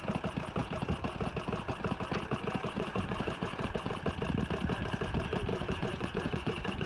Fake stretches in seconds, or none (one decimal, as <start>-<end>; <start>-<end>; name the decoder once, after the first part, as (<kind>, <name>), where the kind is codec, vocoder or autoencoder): 2.6-3.9 (vocoder, Vocos); 5.5-6.9